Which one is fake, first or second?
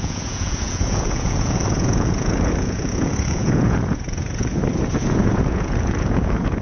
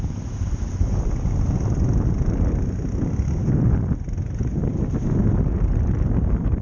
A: first